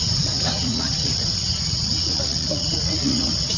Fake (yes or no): yes